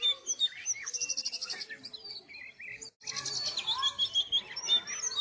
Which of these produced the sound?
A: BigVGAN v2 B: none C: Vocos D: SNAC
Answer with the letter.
B